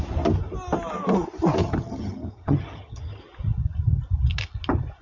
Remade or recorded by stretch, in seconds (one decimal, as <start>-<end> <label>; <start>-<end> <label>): 0.0-1.6 recorded; 1.6-3.2 remade; 3.2-5.0 recorded